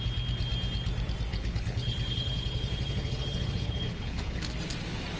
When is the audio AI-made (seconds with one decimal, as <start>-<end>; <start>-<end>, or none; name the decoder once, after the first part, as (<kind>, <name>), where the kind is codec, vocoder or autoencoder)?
1.3-4.4 (codec, HILCodec)